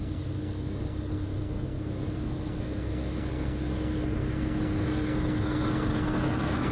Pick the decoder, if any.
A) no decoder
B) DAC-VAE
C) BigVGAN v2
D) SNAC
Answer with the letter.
D